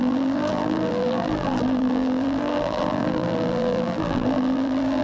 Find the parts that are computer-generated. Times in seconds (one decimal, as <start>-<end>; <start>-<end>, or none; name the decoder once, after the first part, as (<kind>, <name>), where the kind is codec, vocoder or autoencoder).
0.0-5.0 (vocoder, BigVGAN v2)